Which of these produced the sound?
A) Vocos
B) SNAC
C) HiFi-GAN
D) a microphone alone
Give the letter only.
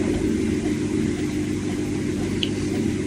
D